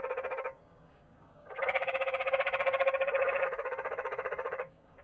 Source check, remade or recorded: remade